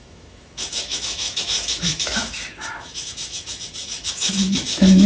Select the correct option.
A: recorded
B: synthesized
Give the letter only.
B